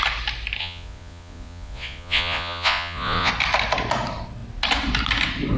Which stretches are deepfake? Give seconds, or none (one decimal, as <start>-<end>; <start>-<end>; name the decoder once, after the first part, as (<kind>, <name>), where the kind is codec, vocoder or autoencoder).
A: 0.6-3.3 (vocoder, Vocos)